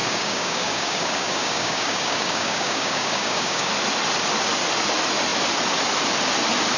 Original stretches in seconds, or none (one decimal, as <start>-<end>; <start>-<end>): 3.7-6.8